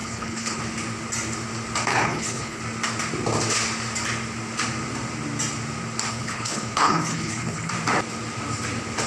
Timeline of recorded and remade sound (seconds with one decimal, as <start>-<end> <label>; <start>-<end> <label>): 0.0-0.6 remade; 0.6-1.9 recorded; 1.9-2.6 remade; 2.6-6.1 recorded; 6.1-7.7 remade; 7.7-9.1 recorded